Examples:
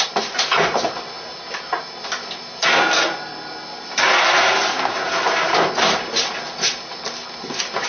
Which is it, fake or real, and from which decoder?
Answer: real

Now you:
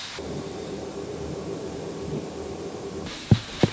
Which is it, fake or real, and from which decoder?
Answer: fake, vocoder, BigVGAN v2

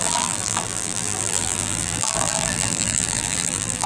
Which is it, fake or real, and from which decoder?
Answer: fake, vocoder, BigVGAN v2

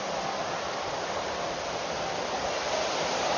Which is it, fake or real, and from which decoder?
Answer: real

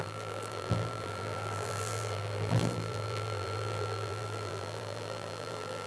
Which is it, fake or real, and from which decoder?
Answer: fake, vocoder, BigVGAN v2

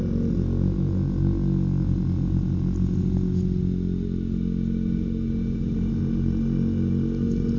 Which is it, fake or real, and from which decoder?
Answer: real